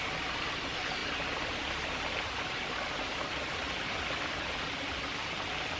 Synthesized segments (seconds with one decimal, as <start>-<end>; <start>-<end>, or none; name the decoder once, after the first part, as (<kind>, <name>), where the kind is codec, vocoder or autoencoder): none